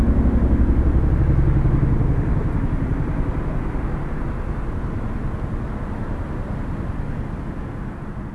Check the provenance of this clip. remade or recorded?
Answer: recorded